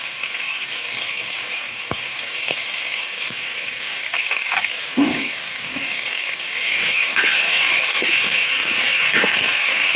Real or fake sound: fake